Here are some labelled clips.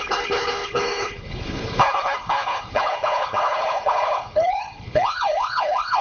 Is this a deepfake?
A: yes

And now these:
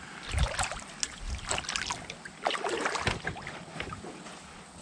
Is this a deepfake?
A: no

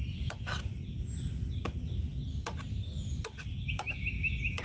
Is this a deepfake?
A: no